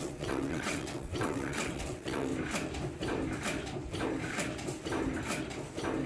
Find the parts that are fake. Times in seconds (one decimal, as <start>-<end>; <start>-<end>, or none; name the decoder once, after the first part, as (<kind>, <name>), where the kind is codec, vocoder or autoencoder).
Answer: 0.0-2.3 (vocoder, WaveNeXt)